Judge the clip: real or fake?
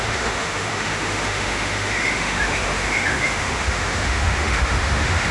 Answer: fake